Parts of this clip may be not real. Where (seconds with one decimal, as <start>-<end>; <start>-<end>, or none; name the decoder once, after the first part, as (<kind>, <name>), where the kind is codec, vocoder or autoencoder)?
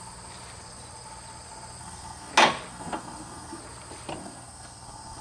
1.8-2.3 (codec, SNAC); 2.7-3.6; 4.2-5.2